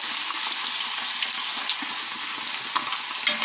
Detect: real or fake real